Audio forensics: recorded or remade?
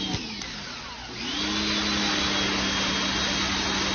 recorded